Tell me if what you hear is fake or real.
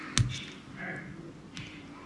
real